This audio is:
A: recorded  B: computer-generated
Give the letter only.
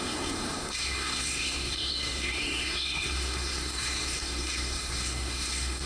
B